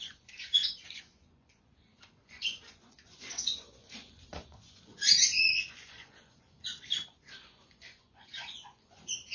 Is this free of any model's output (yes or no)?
no